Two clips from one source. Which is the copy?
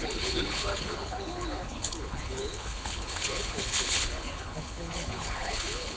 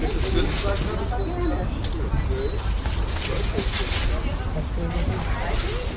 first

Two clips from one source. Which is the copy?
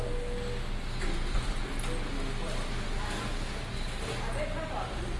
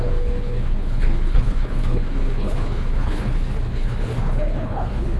second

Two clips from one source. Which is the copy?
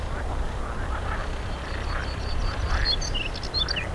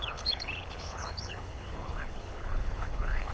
second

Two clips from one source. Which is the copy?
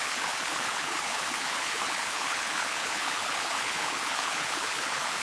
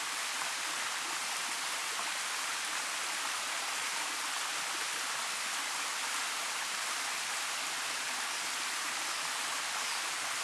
first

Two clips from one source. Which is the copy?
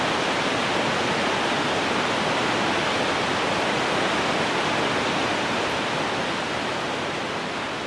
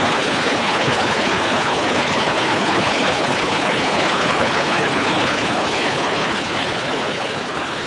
second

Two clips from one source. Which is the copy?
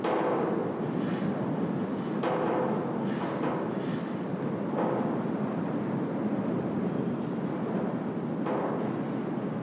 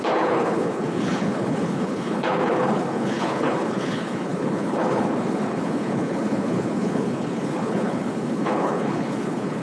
second